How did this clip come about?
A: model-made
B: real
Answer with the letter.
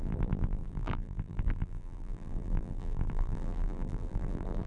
A